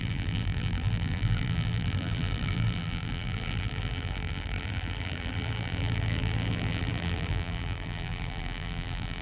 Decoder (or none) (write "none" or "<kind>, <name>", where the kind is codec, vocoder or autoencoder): vocoder, BigVGAN v2